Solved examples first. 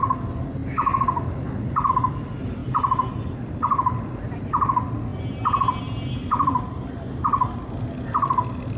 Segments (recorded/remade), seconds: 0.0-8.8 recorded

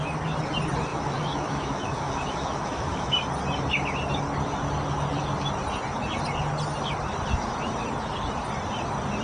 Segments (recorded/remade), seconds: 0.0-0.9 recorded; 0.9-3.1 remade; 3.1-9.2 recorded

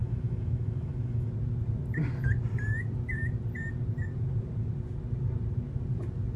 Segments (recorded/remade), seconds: 0.0-1.3 remade; 1.3-6.4 recorded

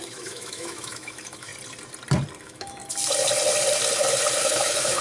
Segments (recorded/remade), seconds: 0.0-1.5 remade; 1.5-2.4 recorded; 2.4-2.8 remade; 2.8-4.4 recorded; 4.4-5.0 remade

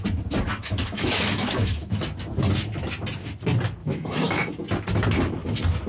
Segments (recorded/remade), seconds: 0.0-0.6 recorded; 0.6-2.0 remade; 2.0-3.8 recorded; 3.8-4.5 remade; 4.5-5.9 recorded